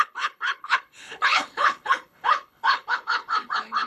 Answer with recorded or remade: remade